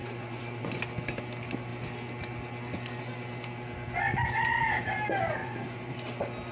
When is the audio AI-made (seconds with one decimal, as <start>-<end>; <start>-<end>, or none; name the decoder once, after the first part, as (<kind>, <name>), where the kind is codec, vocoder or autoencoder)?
0.0-0.8 (vocoder, Vocos); 5.4-5.9